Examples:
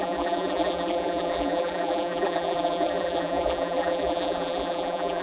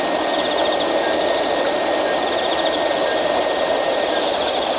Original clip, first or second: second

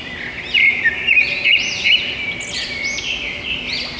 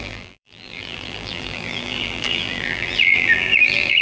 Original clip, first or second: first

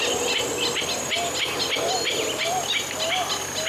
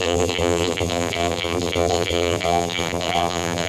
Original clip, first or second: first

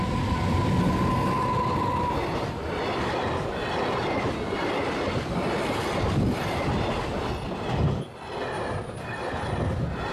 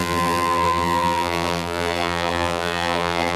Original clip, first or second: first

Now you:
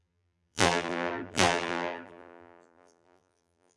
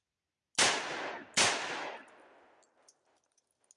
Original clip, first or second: second